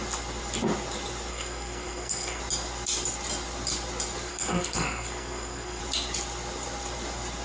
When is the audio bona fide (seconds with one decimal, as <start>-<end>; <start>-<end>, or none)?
0.0-1.3; 2.4-4.3; 5.8-7.4

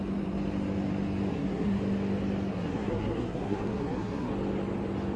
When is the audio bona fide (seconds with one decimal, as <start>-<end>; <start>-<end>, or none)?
0.0-1.3; 1.8-2.5; 4.3-5.2

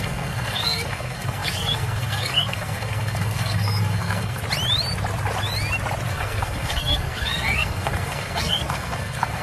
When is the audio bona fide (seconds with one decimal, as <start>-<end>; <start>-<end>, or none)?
4.4-6.1

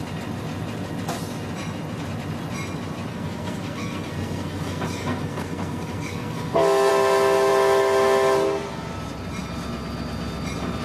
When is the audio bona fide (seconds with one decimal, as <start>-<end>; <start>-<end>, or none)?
0.0-3.1; 6.9-10.8

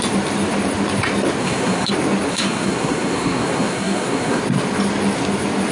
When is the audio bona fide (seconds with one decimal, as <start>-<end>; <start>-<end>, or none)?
0.0-1.4; 1.9-2.3; 4.4-5.7